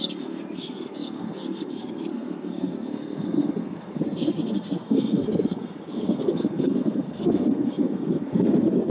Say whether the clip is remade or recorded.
remade